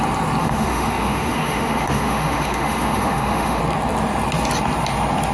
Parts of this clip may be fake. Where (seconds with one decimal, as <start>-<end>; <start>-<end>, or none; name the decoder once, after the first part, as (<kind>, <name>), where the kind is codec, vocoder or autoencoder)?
0.4-3.6 (autoencoder, DAC-VAE)